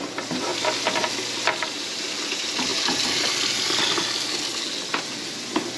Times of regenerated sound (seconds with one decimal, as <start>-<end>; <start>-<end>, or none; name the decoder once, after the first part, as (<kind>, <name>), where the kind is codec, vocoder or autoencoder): none